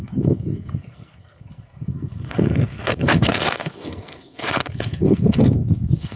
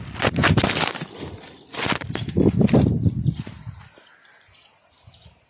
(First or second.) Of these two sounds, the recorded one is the second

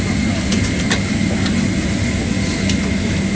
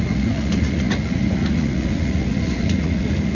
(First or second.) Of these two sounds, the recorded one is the first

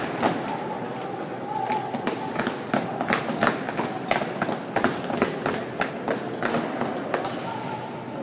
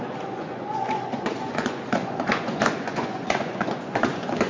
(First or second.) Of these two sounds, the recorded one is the first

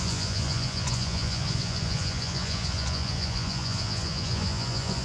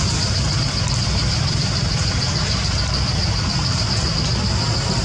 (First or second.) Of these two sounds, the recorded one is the second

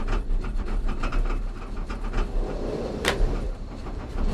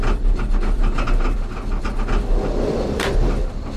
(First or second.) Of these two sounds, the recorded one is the second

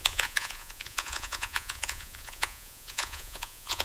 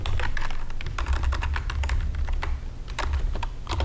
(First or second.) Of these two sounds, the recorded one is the second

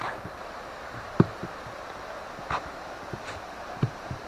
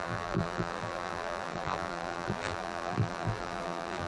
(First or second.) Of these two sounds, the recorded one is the first